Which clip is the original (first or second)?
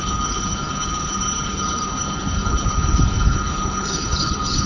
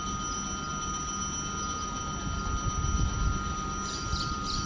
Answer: second